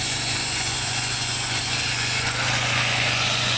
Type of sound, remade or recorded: remade